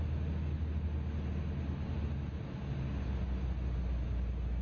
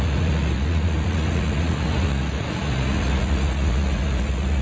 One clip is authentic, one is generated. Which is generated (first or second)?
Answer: second